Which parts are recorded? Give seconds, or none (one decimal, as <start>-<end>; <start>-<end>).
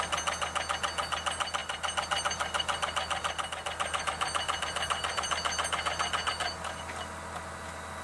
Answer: 0.0-1.6; 6.3-8.0